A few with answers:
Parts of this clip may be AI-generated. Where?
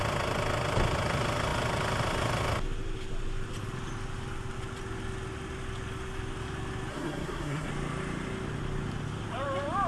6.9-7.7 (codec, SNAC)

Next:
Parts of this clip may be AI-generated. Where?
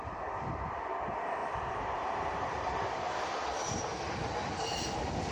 1.4-3.8 (vocoder, BigVGAN v2)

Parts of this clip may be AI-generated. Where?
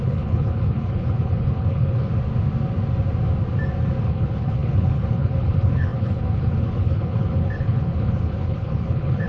0.0-2.1 (codec, HILCodec); 4.0-9.3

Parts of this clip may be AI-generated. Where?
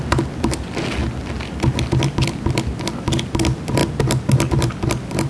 none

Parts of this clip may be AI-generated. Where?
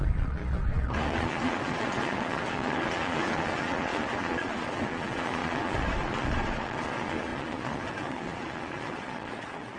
0.0-9.8 (vocoder, Vocos)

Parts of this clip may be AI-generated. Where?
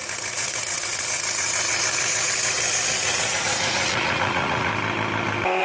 0.0-4.7 (vocoder, Vocos)